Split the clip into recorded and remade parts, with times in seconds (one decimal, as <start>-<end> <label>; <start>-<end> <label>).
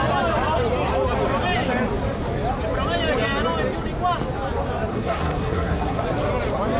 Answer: 0.0-4.9 recorded; 4.9-6.0 remade; 6.0-6.8 recorded